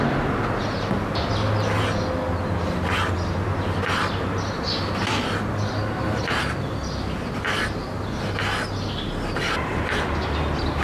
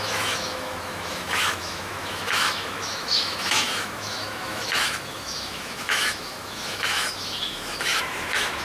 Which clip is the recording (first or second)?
first